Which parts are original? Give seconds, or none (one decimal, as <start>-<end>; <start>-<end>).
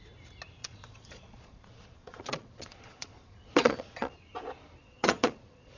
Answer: 0.0-0.6; 4.1-4.8